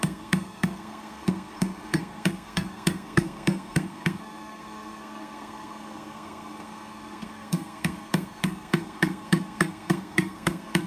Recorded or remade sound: remade